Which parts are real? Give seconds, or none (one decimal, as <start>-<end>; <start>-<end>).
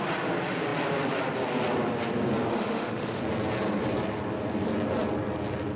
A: 0.0-2.5; 3.2-5.8